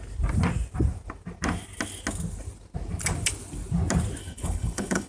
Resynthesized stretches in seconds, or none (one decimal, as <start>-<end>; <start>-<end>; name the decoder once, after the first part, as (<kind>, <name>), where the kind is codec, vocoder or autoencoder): 4.2-5.1 (codec, HILCodec)